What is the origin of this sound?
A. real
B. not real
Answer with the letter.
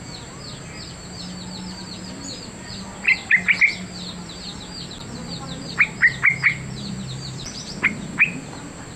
A